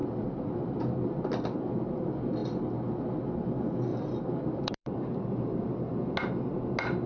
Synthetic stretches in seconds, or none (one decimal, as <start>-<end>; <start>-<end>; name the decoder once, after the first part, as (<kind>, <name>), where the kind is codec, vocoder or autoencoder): 0.0-0.8 (vocoder, BigVGAN v2); 3.9-5.0